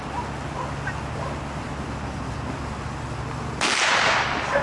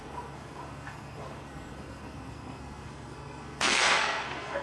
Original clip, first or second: first